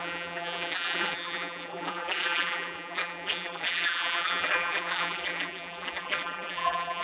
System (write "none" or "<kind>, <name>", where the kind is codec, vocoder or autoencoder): vocoder, BigVGAN v2